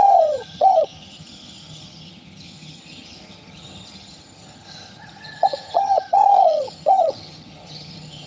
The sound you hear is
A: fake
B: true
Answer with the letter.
A